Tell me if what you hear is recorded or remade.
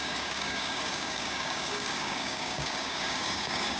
remade